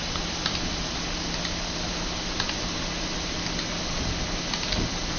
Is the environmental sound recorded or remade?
recorded